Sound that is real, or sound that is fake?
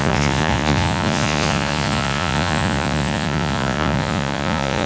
fake